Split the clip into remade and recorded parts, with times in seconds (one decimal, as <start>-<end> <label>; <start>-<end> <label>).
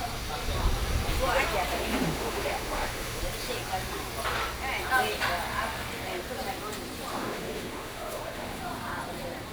0.0-1.7 recorded; 1.7-3.2 remade; 3.2-7.1 recorded; 7.1-8.6 remade; 8.6-9.5 recorded